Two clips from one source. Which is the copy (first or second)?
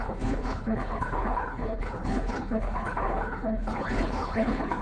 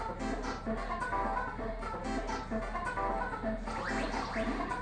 first